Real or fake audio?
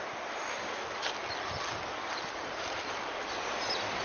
real